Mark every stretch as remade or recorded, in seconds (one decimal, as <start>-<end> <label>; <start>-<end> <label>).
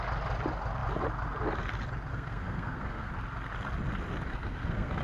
0.0-2.1 recorded; 2.1-3.1 remade; 3.1-4.3 recorded; 4.3-5.0 remade